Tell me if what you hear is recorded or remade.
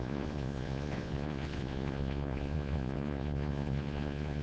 remade